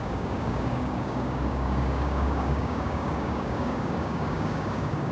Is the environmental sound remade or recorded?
remade